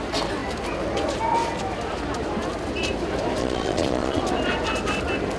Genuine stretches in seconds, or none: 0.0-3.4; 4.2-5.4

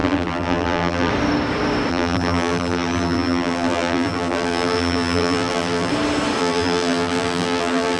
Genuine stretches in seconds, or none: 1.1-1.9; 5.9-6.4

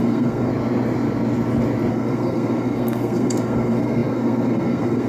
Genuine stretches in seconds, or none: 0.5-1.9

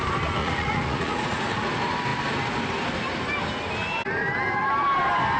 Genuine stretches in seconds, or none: 0.0-0.4; 1.7-5.4

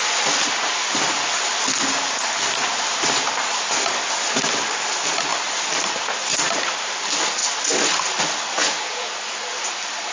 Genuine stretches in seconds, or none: 0.0-8.6; 9.1-10.1

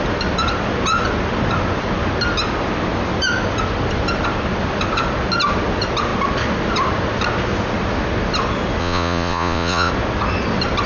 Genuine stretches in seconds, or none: 0.0-8.8; 9.9-10.9